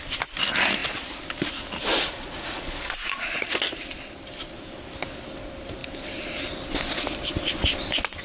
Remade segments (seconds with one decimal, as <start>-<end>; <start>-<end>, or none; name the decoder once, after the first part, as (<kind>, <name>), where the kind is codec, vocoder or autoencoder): 1.9-3.5 (vocoder, Vocos)